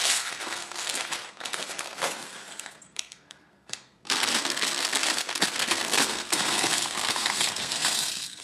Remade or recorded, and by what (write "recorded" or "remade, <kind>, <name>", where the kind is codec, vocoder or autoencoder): remade, codec, SNAC